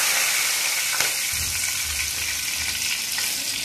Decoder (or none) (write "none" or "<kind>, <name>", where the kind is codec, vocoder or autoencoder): none